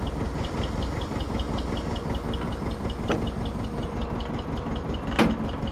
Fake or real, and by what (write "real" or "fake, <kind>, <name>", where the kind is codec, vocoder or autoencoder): real